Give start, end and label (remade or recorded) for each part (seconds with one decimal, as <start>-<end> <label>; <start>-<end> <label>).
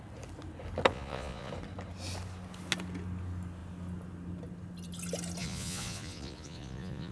0.0-0.9 recorded; 0.9-1.5 remade; 1.5-5.4 recorded; 5.4-7.1 remade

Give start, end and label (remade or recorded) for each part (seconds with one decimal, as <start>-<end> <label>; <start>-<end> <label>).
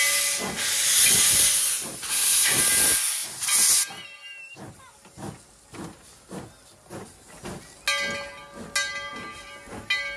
0.0-2.1 recorded; 2.1-2.6 remade; 2.6-10.2 recorded